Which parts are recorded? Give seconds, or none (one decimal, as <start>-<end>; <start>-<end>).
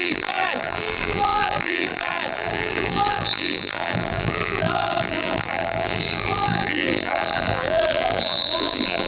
none